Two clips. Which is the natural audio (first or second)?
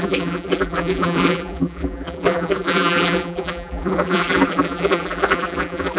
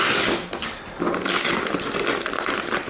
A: second